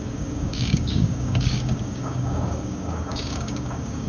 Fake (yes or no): yes